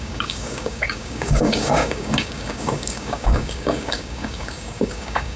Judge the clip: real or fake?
fake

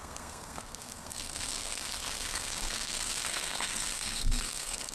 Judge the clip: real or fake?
fake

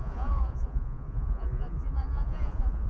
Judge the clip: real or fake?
fake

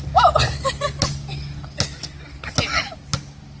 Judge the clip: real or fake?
real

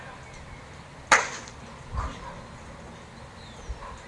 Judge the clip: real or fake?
real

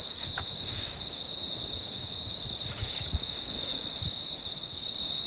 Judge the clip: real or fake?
fake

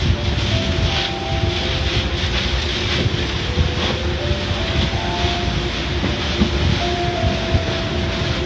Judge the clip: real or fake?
real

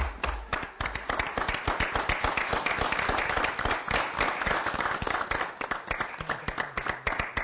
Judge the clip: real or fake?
real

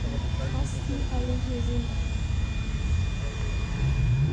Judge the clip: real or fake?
real